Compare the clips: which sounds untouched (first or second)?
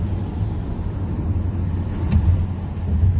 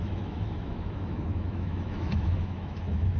first